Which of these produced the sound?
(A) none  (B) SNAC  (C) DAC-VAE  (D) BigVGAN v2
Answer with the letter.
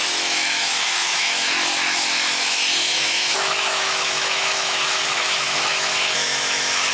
C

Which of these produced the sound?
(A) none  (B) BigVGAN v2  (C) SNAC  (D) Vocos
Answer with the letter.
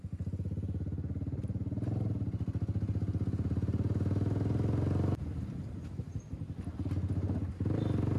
A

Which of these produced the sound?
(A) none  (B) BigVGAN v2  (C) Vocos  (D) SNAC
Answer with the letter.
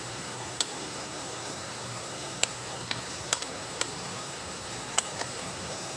D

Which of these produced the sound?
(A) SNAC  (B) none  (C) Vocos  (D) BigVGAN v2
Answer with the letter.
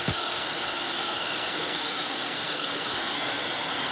A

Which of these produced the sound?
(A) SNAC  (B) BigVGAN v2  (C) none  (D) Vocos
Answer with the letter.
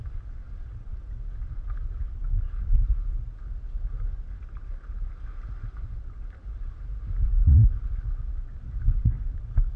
C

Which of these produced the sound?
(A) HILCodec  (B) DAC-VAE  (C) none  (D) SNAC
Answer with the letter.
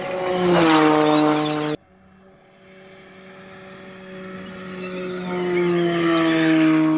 C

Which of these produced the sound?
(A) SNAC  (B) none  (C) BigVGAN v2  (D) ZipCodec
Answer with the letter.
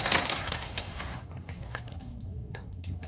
A